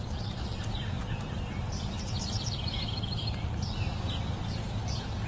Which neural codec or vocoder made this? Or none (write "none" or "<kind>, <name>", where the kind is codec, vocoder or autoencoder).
none